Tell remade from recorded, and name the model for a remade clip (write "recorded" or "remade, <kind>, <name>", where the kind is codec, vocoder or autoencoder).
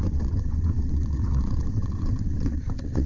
remade, vocoder, WaveNeXt